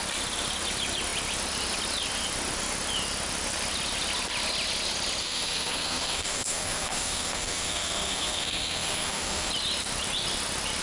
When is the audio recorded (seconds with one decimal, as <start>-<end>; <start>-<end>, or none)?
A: 0.0-5.2; 9.5-10.8